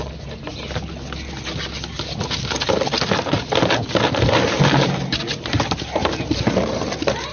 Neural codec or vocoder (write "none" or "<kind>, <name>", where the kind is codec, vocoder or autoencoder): none